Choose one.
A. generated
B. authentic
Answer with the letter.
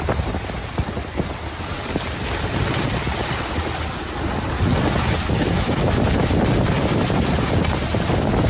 B